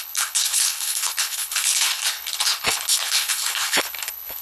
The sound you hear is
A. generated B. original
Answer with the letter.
A